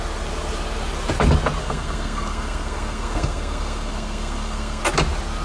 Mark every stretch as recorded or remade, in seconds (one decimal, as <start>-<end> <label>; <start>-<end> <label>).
0.0-1.6 recorded; 1.6-4.8 remade; 4.8-5.4 recorded